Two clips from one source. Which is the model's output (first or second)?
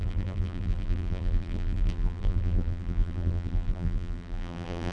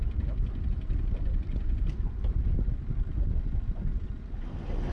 first